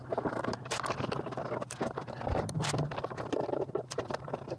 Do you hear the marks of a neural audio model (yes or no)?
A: yes